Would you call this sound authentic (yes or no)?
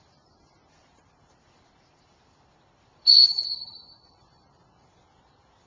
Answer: no